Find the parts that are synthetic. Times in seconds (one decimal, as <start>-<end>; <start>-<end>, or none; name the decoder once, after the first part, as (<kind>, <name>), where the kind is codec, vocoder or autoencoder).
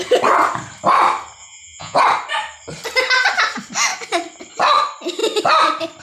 1.4-2.0 (vocoder, Vocos)